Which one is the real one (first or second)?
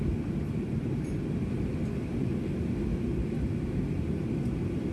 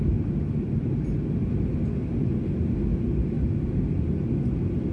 second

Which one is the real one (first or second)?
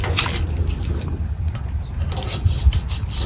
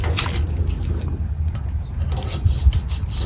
second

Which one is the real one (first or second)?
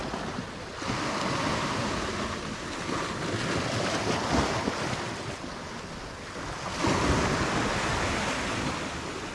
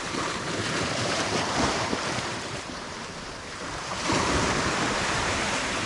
first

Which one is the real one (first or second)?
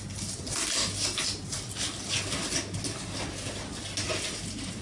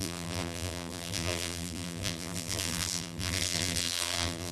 first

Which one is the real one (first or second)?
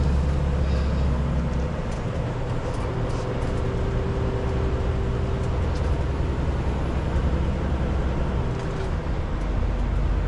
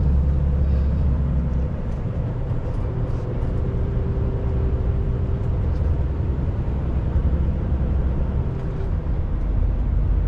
first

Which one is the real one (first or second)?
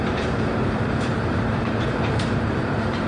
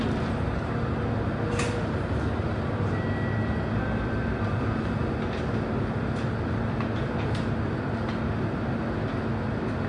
second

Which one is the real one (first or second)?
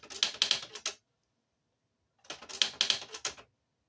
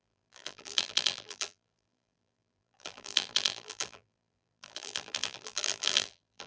first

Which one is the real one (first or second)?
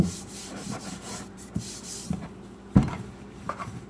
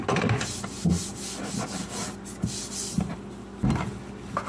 second